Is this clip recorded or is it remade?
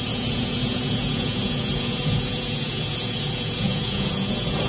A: remade